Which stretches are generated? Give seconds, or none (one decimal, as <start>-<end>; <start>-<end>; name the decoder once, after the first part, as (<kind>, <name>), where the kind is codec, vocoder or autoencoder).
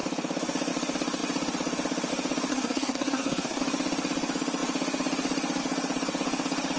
2.5-3.6 (codec, SNAC)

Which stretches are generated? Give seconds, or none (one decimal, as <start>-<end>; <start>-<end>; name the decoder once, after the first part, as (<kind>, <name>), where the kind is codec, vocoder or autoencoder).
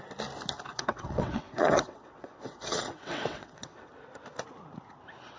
0.7-3.9 (vocoder, WaveNeXt)